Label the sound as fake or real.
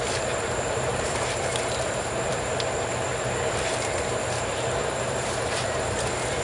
fake